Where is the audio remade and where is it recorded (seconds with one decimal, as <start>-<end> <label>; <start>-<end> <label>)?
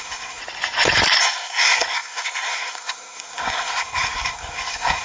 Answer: 0.0-0.4 remade; 0.4-1.2 recorded; 1.2-5.0 remade